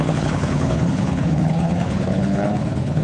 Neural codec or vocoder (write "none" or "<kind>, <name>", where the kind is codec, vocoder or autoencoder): codec, HILCodec